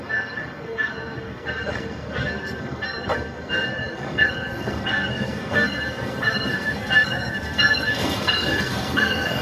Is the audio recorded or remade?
remade